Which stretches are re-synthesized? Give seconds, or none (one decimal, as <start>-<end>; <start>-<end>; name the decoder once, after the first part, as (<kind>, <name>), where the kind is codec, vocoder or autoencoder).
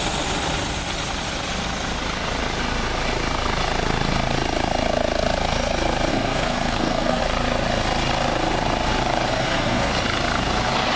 6.1-7.2 (codec, SNAC); 9.3-9.9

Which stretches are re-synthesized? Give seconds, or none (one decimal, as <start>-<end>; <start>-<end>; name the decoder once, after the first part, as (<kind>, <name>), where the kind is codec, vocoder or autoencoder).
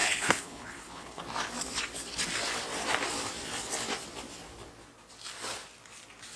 0.0-1.2 (codec, HILCodec)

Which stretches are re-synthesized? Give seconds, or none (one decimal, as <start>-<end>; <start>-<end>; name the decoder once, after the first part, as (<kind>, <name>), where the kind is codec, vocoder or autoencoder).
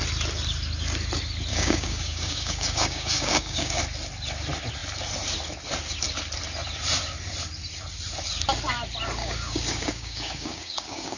1.5-3.8 (codec, DAC); 9.2-11.2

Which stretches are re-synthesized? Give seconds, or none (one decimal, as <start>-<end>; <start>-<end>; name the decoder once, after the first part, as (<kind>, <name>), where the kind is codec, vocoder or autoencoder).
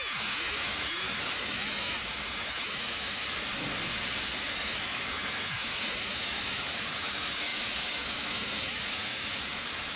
0.0-3.2 (autoencoder, DAC-VAE); 4.5-10.0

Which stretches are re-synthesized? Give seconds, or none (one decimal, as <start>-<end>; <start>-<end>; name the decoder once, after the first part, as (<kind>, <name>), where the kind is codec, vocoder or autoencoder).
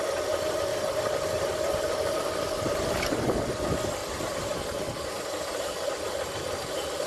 4.0-4.6 (vocoder, BigVGAN v2)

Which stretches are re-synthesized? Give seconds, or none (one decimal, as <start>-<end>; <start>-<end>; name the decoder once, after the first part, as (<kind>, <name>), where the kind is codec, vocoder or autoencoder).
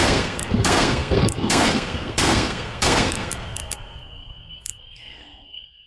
0.0-5.9 (codec, SNAC)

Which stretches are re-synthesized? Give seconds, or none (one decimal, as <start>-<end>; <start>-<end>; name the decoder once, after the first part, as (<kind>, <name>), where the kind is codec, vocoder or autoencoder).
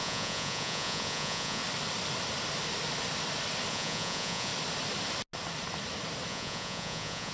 0.0-1.6 (vocoder, Vocos); 3.7-4.5; 6.3-7.3